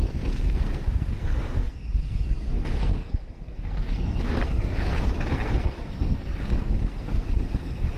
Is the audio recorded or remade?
remade